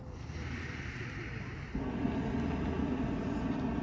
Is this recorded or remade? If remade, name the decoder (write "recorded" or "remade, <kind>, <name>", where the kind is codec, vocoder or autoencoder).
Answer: recorded